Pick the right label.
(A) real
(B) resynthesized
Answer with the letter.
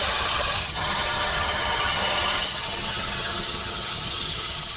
B